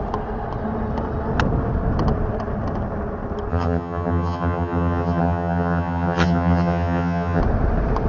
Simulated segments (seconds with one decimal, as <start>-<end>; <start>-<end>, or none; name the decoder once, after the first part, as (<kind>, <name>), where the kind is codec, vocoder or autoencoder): 3.5-7.4 (vocoder, HiFi-GAN)